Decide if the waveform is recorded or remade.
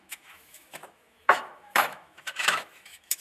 remade